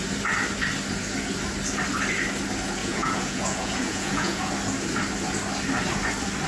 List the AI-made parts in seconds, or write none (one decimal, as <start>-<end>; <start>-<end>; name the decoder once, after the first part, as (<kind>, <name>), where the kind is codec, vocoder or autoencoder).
2.8-4.5 (vocoder, Vocos)